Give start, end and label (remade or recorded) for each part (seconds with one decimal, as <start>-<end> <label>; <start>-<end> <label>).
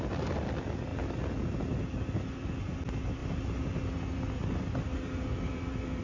0.0-6.0 recorded